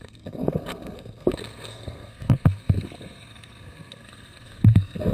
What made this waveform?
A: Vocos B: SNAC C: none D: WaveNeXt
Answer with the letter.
B